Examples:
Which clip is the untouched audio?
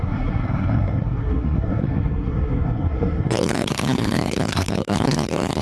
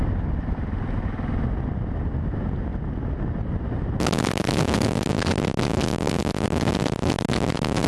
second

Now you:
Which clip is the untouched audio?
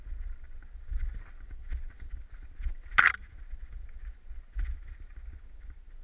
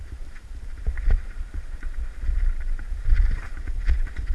first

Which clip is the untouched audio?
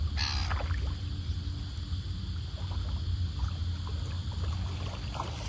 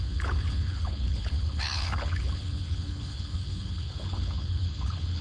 first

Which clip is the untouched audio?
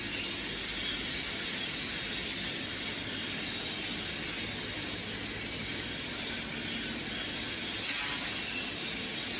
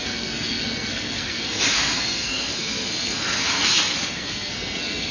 first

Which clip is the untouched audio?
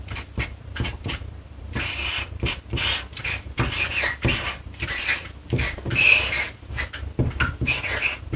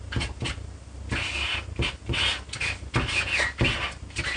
second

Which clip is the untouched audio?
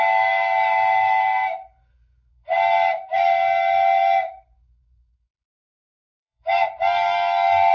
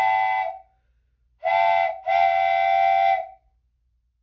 second